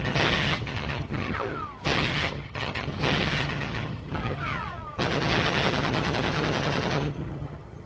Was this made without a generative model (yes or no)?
no